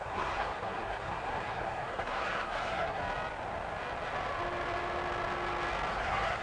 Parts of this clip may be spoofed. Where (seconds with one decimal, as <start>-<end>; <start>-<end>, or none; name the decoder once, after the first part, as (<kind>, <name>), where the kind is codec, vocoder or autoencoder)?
0.0-3.0 (codec, SNAC); 5.9-6.4